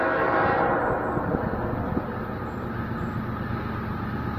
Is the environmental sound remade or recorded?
recorded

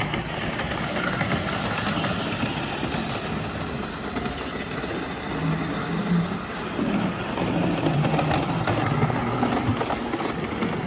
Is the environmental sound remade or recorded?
recorded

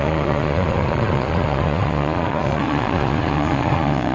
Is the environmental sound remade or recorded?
remade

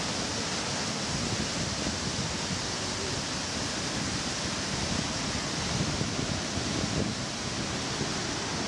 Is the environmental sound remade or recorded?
recorded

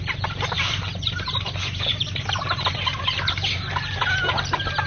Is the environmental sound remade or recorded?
remade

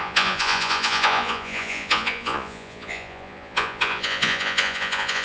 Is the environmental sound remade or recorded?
remade